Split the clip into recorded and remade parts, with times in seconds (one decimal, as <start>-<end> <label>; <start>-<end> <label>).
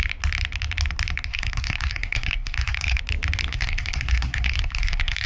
0.0-1.3 recorded; 1.3-3.0 remade; 3.0-3.5 recorded; 3.5-5.3 remade